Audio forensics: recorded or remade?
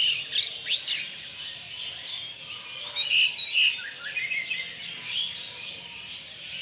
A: recorded